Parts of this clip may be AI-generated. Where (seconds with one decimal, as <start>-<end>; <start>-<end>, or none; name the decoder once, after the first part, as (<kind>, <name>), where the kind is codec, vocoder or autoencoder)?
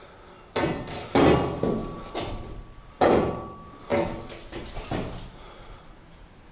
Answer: 1.8-2.8 (vocoder, BigVGAN v2); 3.9-6.0